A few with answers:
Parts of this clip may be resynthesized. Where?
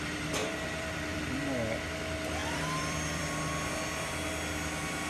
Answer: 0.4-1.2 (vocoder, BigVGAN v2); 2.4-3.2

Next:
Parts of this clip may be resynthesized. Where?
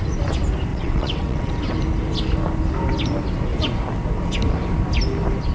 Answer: 0.7-1.5 (vocoder, WaveNeXt)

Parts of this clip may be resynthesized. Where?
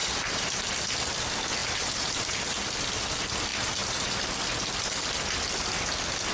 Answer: 0.0-0.7 (vocoder, BigVGAN v2); 1.6-2.4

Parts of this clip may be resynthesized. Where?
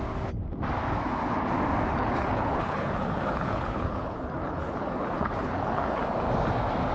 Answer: 1.9-6.0 (codec, HILCodec)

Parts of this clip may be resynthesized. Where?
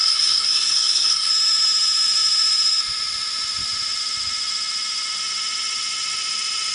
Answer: 0.0-1.3 (codec, SNAC)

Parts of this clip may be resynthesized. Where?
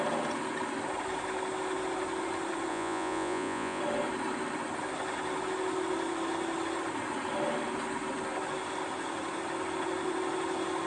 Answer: 2.7-3.8 (vocoder, Vocos)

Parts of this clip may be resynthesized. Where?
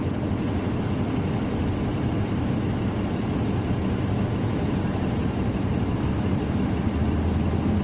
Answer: 1.9-2.5 (vocoder, BigVGAN v2); 5.2-6.4